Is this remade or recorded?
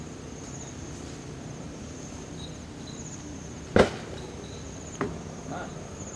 recorded